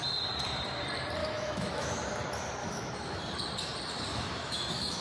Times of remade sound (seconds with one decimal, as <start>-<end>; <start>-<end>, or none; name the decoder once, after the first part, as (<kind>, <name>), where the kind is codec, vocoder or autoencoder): 1.2-2.0 (autoencoder, DAC-VAE); 2.6-3.2; 4.1-5.0